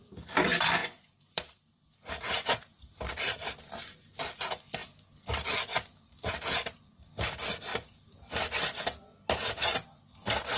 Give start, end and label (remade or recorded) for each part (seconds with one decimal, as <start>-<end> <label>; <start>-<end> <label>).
0.0-0.8 recorded; 0.8-2.1 remade; 2.1-2.7 recorded; 2.7-3.6 remade; 3.6-10.6 recorded